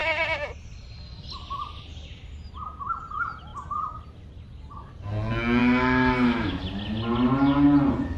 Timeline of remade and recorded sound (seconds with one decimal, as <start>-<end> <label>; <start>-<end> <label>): 0.0-5.6 recorded; 5.6-6.6 remade; 6.6-8.2 recorded